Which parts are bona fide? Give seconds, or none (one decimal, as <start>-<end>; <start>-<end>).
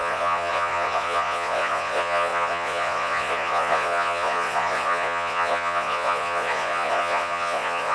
none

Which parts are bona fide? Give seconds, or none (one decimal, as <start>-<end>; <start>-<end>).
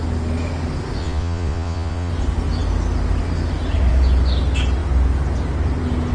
0.0-1.0; 2.1-6.1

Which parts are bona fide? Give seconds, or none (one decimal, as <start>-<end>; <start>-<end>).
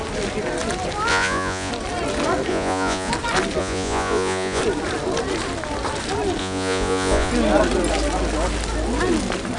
0.0-1.1; 1.7-2.5; 3.1-3.6; 4.6-6.4; 7.3-9.6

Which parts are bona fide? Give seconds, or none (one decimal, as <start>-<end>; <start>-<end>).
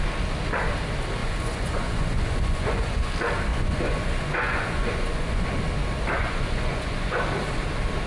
0.0-1.2; 3.1-3.5; 5.4-6.2; 7.2-8.1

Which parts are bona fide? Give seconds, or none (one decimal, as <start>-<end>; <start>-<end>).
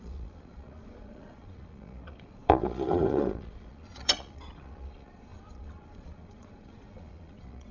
none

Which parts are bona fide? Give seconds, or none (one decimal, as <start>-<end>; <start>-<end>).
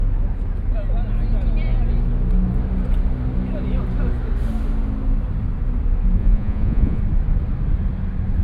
0.0-6.2; 7.0-8.4